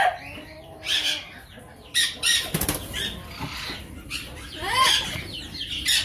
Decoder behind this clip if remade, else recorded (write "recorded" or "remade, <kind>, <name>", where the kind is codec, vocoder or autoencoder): remade, vocoder, BigVGAN v2